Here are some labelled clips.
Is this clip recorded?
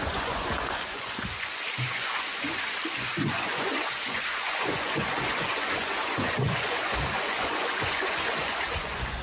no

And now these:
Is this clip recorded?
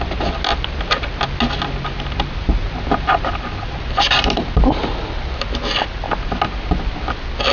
yes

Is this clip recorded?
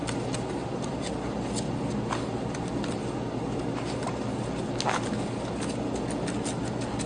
yes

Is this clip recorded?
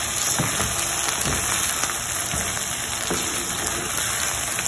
yes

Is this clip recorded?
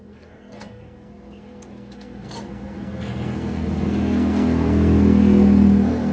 no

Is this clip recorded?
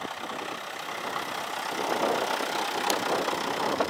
yes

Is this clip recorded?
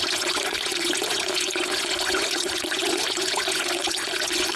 no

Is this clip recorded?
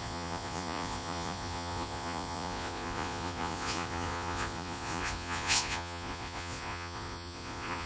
no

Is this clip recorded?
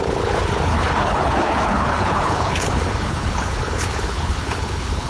no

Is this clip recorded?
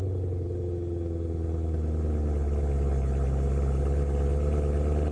yes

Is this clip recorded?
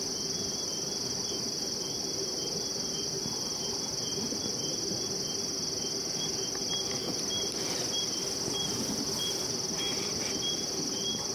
yes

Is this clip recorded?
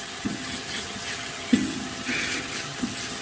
no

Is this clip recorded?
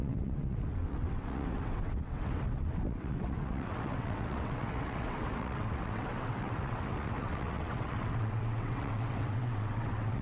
no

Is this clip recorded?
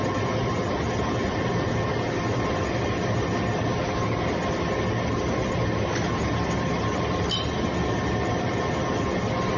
yes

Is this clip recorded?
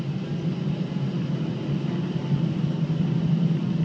yes